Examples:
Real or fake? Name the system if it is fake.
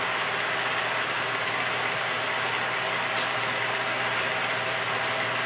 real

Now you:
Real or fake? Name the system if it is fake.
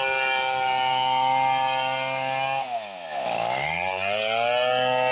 real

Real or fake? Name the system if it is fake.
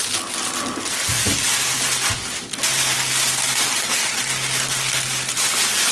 real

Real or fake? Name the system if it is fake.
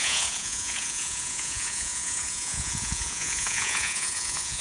fake, vocoder, Vocos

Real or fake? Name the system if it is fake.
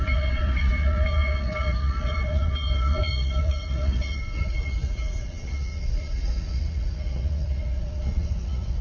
fake, vocoder, Vocos